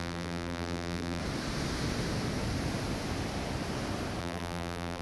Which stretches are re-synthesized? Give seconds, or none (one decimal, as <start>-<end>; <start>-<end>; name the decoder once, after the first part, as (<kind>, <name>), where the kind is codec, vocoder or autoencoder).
0.0-1.2 (vocoder, BigVGAN v2); 4.2-5.0